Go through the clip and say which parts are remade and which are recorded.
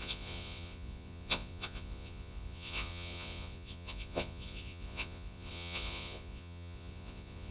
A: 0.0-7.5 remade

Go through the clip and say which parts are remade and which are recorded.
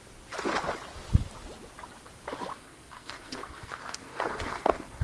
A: 0.0-2.5 recorded; 2.5-5.0 remade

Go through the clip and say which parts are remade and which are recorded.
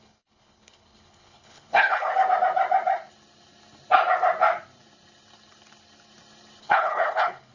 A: 0.0-2.1 remade; 2.1-6.6 recorded; 6.6-7.5 remade